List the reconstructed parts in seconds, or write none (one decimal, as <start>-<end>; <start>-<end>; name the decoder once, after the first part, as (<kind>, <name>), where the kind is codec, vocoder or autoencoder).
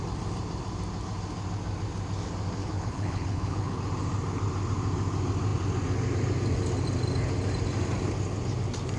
2.6-3.8 (codec, HILCodec)